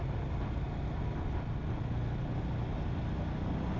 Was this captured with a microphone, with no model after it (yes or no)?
yes